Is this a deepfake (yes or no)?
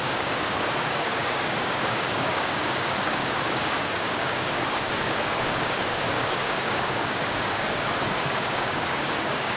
yes